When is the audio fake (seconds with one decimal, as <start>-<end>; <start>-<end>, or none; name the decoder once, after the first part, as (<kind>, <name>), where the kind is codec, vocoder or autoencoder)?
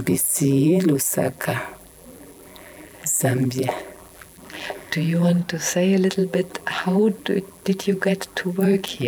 0.0-5.4 (vocoder, BigVGAN v2); 6.1-9.1